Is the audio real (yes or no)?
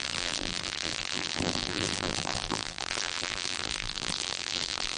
no